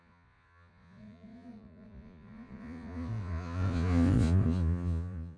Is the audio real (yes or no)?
no